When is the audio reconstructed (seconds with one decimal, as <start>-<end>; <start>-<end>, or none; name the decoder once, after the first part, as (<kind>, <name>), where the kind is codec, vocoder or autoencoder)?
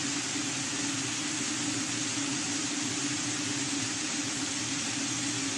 2.1-4.5 (vocoder, BigVGAN v2)